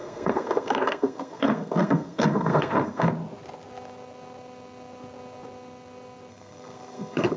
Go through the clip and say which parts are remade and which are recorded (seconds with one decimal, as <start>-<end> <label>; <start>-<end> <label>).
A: 0.0-3.1 remade; 3.1-6.3 recorded; 6.3-7.4 remade